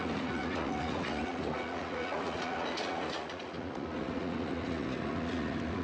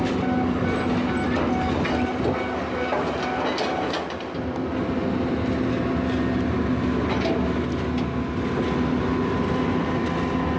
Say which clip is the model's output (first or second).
first